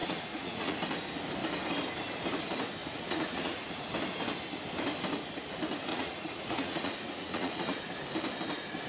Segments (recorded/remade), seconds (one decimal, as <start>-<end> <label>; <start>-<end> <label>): 0.0-0.8 remade; 0.8-2.8 recorded; 2.8-3.8 remade; 3.8-5.9 recorded; 5.9-7.9 remade; 7.9-8.9 recorded